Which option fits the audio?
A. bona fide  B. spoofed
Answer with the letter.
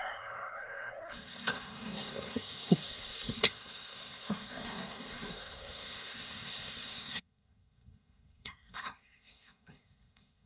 B